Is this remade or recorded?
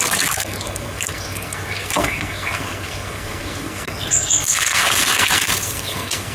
remade